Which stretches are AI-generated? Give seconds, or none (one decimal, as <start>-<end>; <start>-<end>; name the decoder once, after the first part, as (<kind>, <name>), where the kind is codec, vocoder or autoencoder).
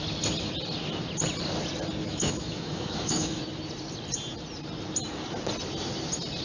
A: 2.0-3.4 (autoencoder, DAC-VAE)